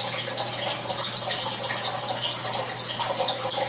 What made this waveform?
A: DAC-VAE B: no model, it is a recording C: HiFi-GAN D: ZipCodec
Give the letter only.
B